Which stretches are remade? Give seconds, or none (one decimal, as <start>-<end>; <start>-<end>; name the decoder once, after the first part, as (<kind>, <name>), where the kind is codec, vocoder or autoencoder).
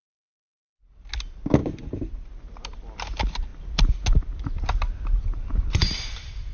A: 1.6-2.8 (vocoder, BigVGAN v2); 5.8-6.5